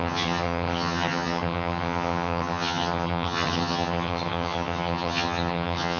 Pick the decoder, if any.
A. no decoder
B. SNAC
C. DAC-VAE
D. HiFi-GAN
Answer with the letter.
D